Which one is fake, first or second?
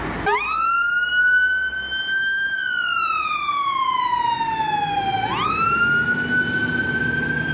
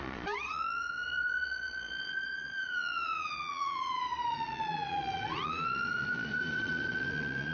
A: second